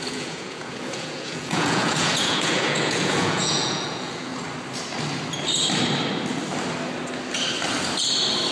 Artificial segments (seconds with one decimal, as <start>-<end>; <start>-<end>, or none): 0.0-4.3